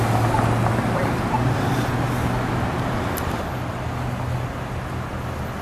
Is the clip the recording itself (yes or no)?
yes